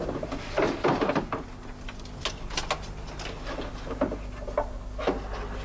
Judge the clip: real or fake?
real